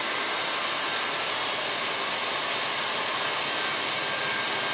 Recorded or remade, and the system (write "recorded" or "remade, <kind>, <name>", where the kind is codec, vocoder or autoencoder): recorded